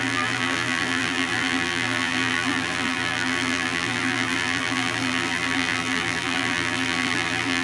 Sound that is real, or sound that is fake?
fake